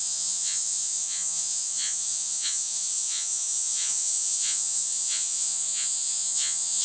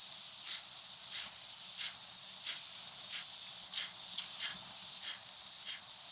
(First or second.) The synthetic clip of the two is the first